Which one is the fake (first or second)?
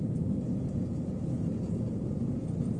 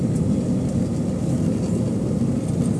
first